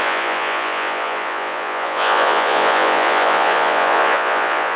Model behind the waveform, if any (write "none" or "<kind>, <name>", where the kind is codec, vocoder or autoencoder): vocoder, Vocos